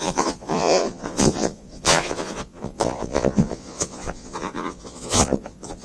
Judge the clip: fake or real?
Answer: fake